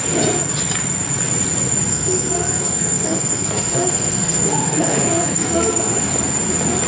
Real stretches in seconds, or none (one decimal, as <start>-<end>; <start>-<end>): 0.0-1.9; 6.0-6.9